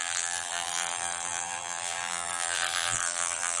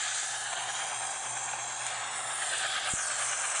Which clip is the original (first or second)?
second